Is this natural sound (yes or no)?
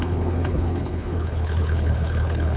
no